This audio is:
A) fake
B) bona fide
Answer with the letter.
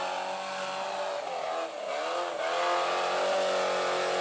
B